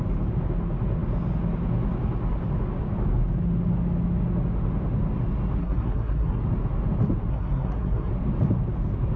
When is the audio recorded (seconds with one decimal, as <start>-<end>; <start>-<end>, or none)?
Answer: 0.0-5.6; 6.4-7.3; 8.1-9.2